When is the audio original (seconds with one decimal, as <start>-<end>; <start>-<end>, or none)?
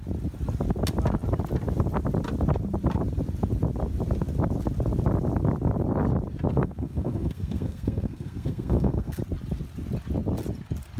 0.0-6.5; 9.2-11.0